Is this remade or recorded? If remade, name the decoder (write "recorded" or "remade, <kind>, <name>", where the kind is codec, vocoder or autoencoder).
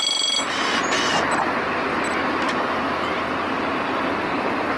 recorded